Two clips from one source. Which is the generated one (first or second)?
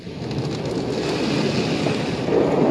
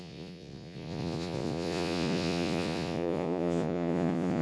second